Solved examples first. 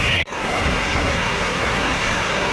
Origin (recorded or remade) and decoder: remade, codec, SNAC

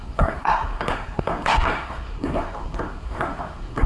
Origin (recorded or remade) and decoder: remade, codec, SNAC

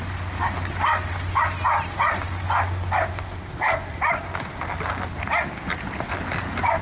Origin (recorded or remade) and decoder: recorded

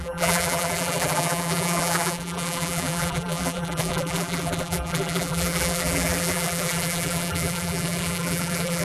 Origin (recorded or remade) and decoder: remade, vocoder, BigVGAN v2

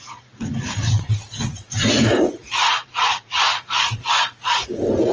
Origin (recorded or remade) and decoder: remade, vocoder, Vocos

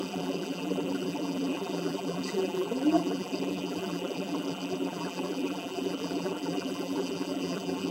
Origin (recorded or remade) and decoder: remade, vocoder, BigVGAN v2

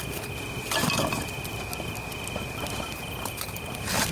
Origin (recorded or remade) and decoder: recorded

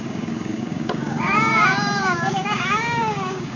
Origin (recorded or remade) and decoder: remade, codec, DAC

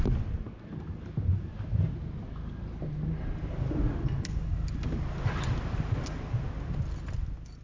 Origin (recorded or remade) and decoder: recorded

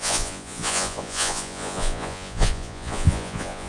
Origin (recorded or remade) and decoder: remade, vocoder, Vocos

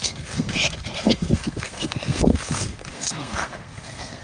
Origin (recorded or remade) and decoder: remade, codec, SNAC